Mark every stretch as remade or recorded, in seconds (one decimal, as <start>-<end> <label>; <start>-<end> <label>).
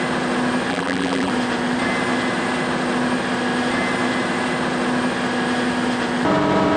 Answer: 0.0-0.7 recorded; 0.7-1.3 remade; 1.3-6.8 recorded